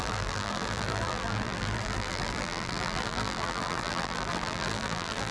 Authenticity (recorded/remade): remade